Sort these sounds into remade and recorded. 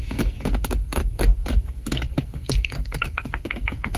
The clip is remade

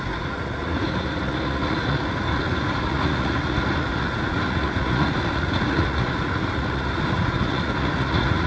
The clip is remade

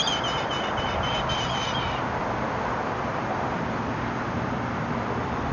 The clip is remade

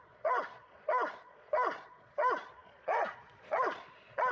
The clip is remade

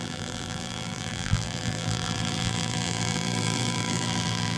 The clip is remade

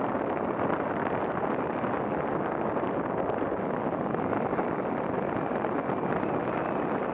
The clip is recorded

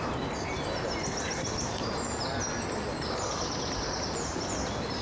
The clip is recorded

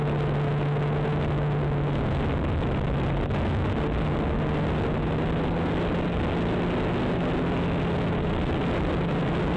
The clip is recorded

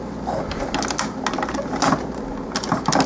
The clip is recorded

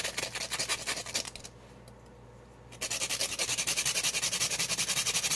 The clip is recorded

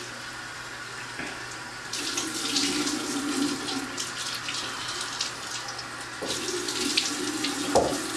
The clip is recorded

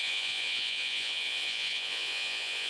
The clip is remade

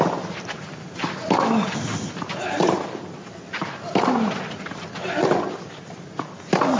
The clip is recorded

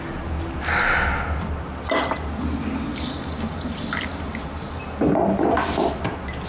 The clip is recorded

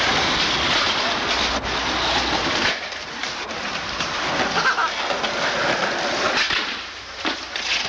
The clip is recorded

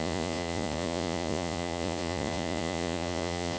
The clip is remade